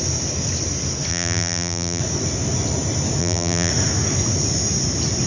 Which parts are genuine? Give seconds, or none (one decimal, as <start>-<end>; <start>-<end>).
0.0-1.1; 2.0-3.2; 3.7-5.3